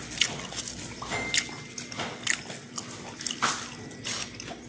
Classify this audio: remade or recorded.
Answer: recorded